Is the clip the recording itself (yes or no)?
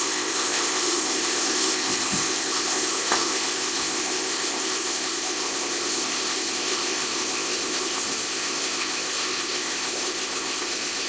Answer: no